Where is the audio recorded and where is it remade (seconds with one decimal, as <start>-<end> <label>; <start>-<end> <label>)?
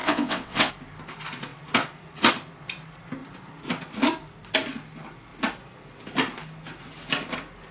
0.0-0.7 remade; 0.7-7.7 recorded